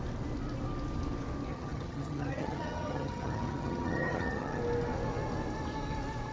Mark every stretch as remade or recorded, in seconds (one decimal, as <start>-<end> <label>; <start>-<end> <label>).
0.0-1.5 recorded; 1.5-4.6 remade; 4.6-6.3 recorded